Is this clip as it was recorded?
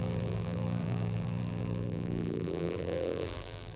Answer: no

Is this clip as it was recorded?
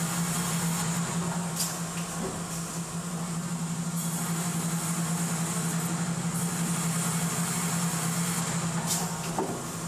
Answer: yes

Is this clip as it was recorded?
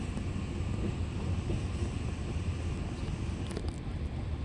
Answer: yes